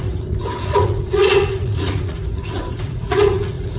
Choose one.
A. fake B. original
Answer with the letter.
A